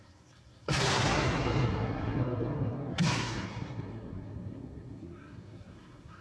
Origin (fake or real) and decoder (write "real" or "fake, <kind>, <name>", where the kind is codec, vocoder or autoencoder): fake, codec, SNAC